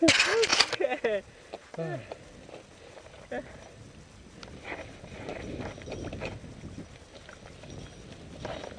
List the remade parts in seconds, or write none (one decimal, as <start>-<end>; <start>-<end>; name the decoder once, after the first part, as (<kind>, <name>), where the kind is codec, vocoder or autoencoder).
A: none